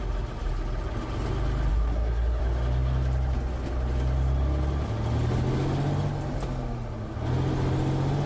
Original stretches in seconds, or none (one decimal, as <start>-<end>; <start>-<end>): 0.0-1.7; 2.4-8.3